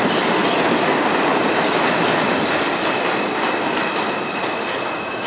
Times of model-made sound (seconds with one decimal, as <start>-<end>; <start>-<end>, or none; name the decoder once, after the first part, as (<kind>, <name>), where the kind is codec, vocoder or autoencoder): none